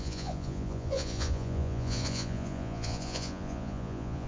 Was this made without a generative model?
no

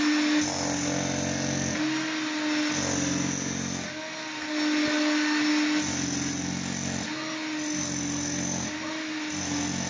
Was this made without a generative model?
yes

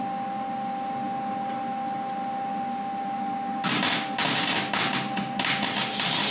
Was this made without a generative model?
yes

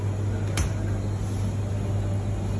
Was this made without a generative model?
yes